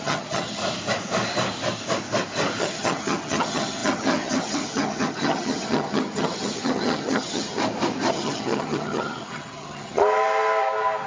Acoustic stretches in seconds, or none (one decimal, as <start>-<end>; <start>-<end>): 0.6-2.6; 7.6-8.1; 10.0-11.1